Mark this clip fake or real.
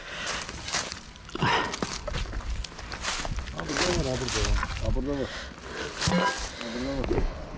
real